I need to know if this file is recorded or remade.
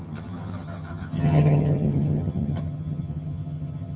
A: remade